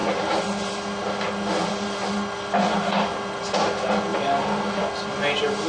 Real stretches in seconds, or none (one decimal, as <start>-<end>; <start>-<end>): 0.0-5.7